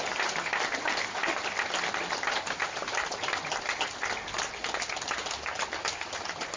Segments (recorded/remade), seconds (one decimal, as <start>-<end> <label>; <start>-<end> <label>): 0.0-6.6 recorded